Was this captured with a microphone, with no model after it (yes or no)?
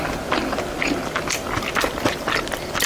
yes